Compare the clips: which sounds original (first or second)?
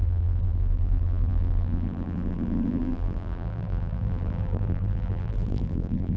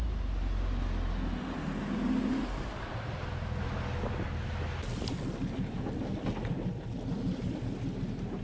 second